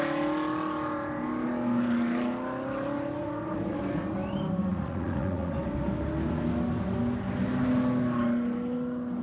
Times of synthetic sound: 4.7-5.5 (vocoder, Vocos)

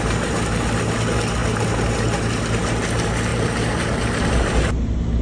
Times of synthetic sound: 3.3-4.0 (vocoder, BigVGAN v2)

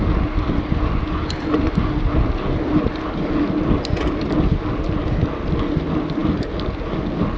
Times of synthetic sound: none